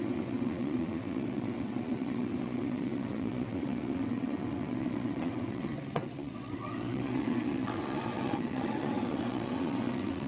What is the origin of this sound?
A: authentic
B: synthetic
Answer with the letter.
B